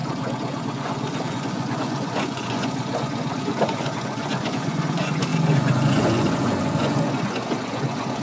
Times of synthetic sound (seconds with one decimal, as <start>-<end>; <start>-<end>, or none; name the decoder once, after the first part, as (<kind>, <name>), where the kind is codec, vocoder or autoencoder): 0.0-8.2 (vocoder, Vocos)